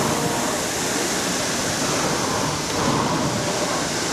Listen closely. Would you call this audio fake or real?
fake